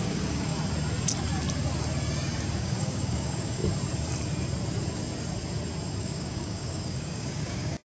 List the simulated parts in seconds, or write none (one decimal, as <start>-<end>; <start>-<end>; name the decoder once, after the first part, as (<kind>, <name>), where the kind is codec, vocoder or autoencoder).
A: 0.0-0.5 (codec, DAC); 2.6-3.6; 6.0-7.9

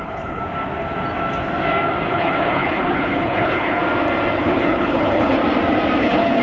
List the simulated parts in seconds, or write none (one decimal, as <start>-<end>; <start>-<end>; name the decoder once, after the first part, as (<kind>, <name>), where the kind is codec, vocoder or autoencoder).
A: 0.0-0.4 (codec, HILCodec); 2.1-3.8; 4.4-5.4; 6.0-6.4

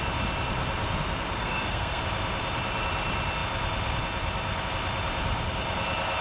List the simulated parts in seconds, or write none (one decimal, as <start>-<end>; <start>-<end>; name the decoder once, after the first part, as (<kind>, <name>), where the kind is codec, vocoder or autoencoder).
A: 1.4-2.0 (codec, SNAC)